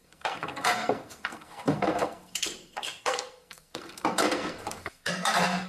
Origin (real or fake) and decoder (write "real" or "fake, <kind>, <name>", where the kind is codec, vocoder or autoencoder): fake, codec, SNAC